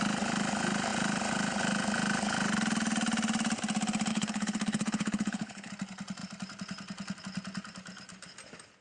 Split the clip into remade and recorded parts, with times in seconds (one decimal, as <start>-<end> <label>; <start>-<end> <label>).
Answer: 0.0-4.1 recorded; 4.1-5.7 remade; 5.7-8.8 recorded